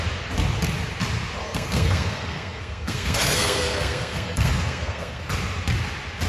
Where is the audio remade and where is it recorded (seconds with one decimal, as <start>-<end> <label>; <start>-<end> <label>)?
0.0-1.4 recorded; 1.4-5.2 remade; 5.2-6.3 recorded